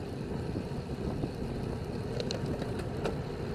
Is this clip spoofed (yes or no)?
no